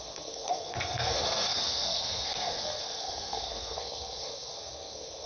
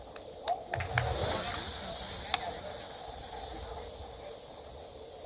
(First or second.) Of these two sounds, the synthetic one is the first